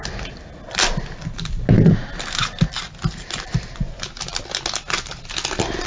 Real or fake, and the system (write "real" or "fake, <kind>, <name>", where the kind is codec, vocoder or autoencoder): real